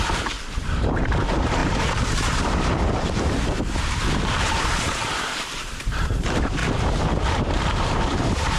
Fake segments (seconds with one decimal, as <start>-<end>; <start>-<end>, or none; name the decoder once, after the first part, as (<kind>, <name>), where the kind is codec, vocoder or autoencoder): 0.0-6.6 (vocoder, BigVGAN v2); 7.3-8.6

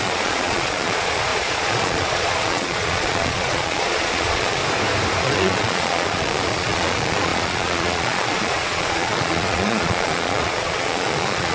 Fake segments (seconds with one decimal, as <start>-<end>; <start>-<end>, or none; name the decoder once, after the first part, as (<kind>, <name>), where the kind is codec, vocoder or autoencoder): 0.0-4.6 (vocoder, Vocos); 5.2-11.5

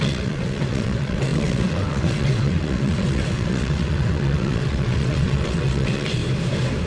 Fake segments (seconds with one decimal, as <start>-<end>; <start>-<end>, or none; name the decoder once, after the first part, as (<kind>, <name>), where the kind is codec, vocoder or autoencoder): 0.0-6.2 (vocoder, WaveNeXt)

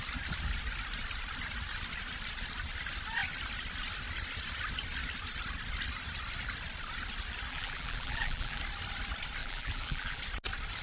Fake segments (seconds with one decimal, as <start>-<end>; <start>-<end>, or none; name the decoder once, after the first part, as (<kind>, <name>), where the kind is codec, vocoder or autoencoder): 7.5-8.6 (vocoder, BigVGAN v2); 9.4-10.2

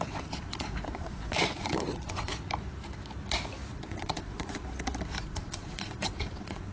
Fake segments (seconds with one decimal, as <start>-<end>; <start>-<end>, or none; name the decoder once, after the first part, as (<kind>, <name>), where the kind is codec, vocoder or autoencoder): 0.0-2.3 (vocoder, Vocos); 3.7-4.6; 5.2-6.7

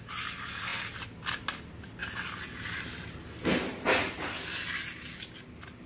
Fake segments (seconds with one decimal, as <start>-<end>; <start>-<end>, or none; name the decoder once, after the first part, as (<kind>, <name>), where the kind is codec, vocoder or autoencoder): none